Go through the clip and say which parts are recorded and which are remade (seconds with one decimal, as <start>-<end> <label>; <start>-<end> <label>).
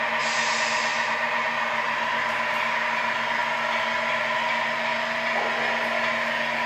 0.0-0.9 recorded; 0.9-1.6 remade; 1.6-6.7 recorded